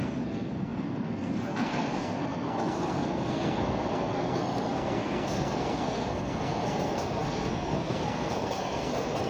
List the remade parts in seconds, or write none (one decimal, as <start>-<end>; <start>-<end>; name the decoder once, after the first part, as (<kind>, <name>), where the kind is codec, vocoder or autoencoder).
0.0-9.3 (codec, SNAC)